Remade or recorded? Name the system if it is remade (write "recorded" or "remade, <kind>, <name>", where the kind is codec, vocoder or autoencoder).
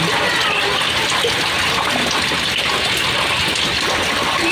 recorded